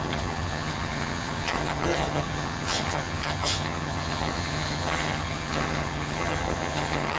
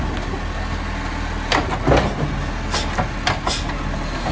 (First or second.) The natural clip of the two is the second